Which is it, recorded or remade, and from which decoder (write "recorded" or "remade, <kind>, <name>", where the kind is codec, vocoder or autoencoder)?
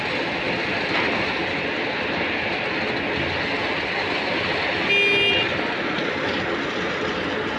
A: recorded